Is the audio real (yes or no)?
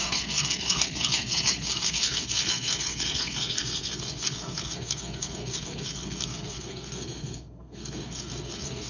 no